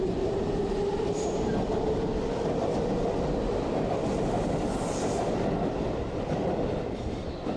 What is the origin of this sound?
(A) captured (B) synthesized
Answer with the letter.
A